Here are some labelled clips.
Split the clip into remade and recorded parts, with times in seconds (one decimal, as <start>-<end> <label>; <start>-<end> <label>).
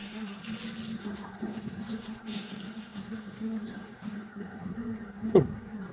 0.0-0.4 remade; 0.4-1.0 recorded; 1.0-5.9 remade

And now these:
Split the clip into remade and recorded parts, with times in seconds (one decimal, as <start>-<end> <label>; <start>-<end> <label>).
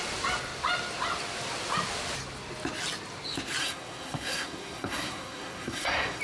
0.0-3.6 recorded; 3.6-6.2 remade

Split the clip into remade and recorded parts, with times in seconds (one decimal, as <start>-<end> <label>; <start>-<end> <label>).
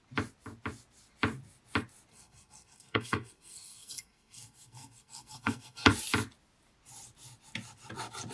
0.0-2.1 recorded; 2.1-5.9 remade; 5.9-8.3 recorded